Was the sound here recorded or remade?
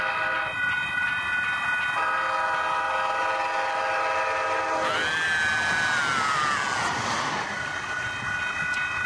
recorded